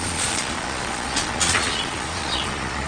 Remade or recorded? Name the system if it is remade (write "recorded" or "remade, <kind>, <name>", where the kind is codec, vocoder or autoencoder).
remade, vocoder, Vocos